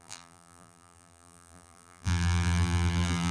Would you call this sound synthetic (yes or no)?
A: yes